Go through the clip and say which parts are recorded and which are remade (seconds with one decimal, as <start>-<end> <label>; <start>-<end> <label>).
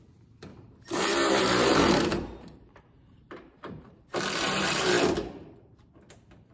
0.0-0.5 recorded; 0.5-4.0 remade; 4.0-6.5 recorded